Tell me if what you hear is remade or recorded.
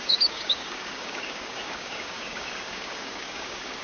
remade